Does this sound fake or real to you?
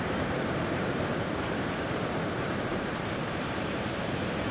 fake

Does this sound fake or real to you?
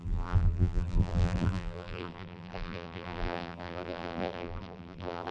fake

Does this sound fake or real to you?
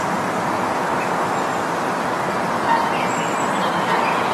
real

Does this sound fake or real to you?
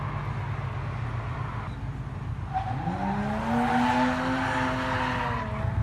real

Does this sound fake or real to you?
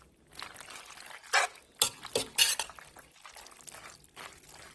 real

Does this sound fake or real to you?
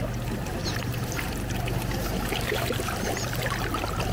real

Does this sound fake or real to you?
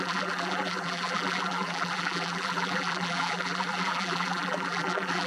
fake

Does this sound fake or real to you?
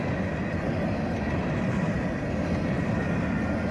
real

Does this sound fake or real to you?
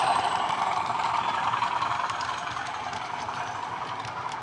fake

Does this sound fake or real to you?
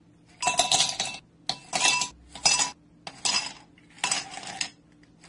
real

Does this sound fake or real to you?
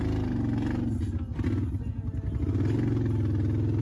real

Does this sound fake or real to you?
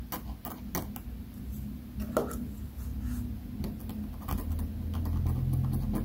real